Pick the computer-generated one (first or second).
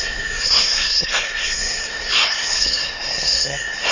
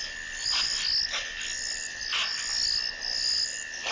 first